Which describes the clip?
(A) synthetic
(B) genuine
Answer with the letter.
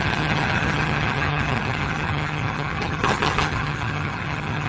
A